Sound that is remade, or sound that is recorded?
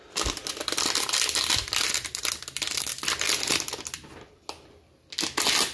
recorded